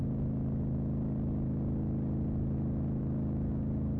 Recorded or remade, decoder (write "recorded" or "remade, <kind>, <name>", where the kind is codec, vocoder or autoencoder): recorded